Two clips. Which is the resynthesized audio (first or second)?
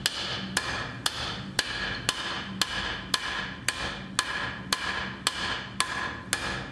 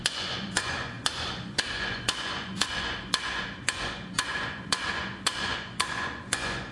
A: second